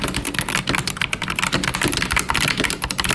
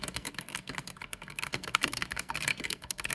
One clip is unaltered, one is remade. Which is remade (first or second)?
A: second